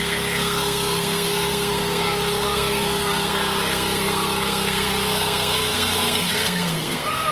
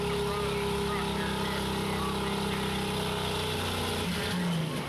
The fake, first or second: first